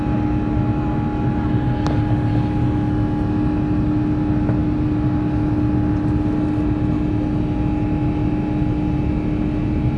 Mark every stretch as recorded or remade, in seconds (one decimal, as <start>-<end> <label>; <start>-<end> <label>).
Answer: 0.0-10.0 recorded